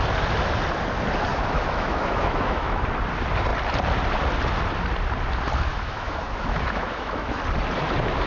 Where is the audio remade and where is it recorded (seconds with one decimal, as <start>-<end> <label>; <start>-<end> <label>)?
0.0-1.3 recorded; 1.3-2.8 remade; 2.8-5.7 recorded; 5.7-7.4 remade; 7.4-8.3 recorded